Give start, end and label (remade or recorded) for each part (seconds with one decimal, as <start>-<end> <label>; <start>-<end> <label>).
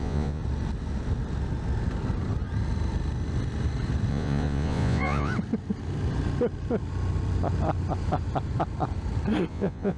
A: 0.0-0.4 remade; 0.4-4.1 recorded; 4.1-5.3 remade; 5.3-9.5 recorded; 9.5-10.0 remade